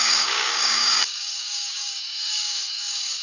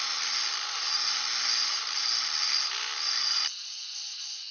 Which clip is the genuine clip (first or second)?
second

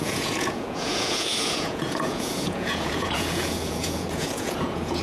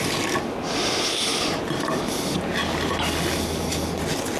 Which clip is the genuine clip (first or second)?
second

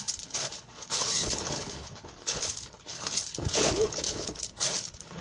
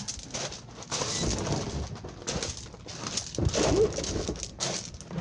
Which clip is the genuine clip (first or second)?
second